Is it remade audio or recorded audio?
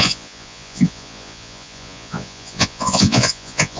remade